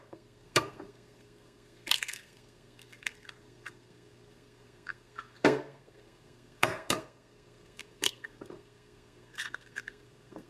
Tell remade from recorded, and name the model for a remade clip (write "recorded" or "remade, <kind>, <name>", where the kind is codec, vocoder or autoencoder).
remade, codec, SNAC